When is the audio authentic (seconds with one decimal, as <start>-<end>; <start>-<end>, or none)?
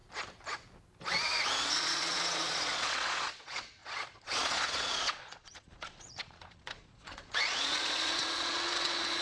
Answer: 0.0-1.6